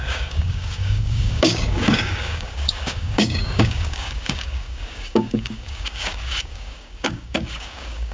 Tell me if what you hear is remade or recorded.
remade